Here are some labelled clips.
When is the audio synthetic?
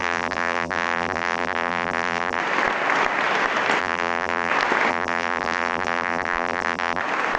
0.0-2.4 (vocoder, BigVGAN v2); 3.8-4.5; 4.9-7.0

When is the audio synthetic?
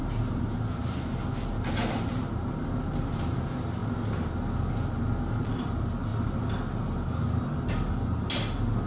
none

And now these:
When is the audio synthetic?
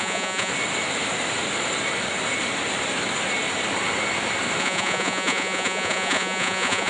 0.0-0.5 (vocoder, Vocos); 4.6-6.9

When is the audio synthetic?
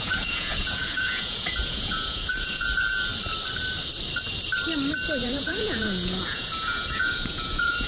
0.0-3.1 (vocoder, Vocos); 5.2-7.9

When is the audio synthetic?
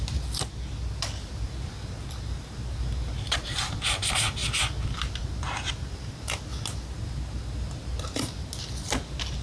none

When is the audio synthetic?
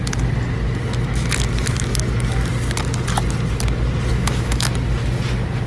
4.1-4.7 (autoencoder, DAC-VAE)